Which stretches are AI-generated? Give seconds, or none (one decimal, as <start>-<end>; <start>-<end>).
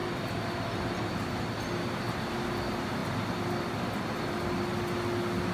none